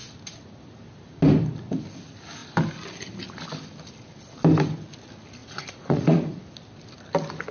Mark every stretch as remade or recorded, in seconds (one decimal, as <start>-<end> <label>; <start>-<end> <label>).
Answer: 0.0-5.4 recorded; 5.4-6.4 remade; 6.4-7.5 recorded